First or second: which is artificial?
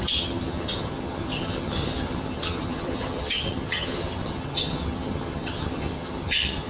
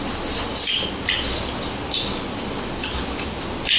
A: first